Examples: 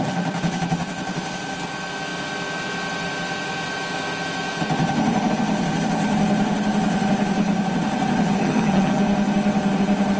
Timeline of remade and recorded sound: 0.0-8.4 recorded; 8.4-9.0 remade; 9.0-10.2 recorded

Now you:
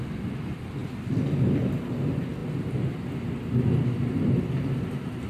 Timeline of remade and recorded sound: 0.0-5.3 recorded

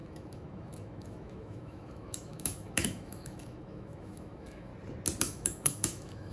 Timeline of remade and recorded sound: 0.0-4.7 remade; 4.7-5.2 recorded; 5.2-6.3 remade

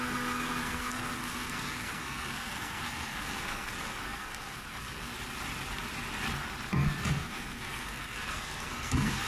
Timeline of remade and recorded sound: 0.0-5.1 remade; 5.1-6.7 recorded; 6.7-9.3 remade

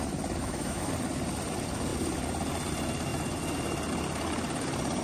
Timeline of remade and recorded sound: 0.0-0.4 recorded; 0.4-0.9 remade; 0.9-5.0 recorded

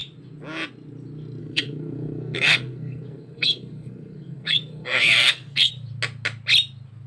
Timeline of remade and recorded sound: 0.0-1.4 recorded; 1.4-5.7 remade; 5.7-7.1 recorded

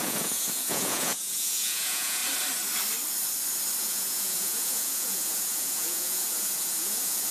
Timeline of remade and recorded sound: 0.0-2.2 remade; 2.2-3.8 recorded; 3.8-7.3 remade

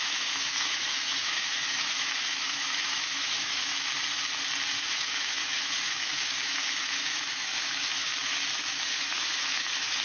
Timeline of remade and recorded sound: 0.0-3.7 remade; 3.7-4.9 recorded; 4.9-8.1 remade; 8.1-8.6 recorded; 8.6-10.0 remade